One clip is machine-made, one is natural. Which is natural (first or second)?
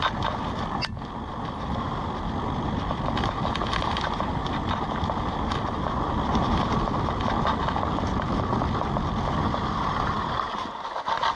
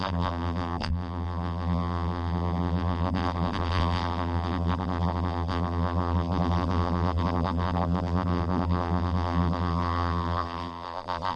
first